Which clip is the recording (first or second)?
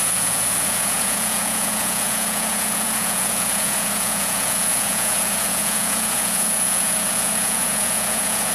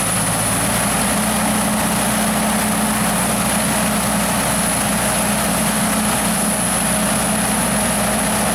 second